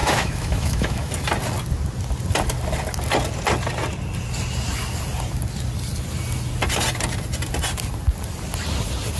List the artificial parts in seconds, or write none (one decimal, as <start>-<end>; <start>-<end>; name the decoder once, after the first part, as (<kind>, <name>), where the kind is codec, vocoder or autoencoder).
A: 0.0-1.1 (autoencoder, DAC-VAE)